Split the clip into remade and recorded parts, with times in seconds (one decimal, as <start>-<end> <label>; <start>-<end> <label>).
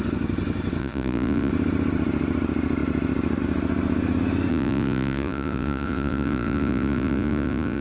0.0-0.8 recorded; 0.8-1.5 remade; 1.5-4.5 recorded; 4.5-7.8 remade